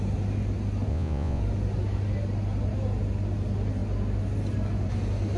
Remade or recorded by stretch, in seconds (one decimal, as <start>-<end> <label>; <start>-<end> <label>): 0.0-0.9 recorded; 0.9-1.4 remade; 1.4-5.4 recorded